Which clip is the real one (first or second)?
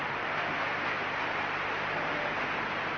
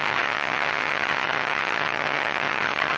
first